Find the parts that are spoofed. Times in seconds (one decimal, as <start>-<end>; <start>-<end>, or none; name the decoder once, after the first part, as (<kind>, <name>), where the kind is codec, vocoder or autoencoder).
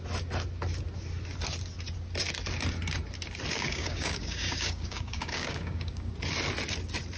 3.5-6.1 (codec, DAC)